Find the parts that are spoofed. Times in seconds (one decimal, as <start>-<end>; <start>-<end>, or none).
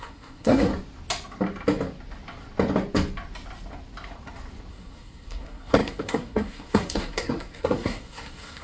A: 0.0-0.7; 4.7-8.6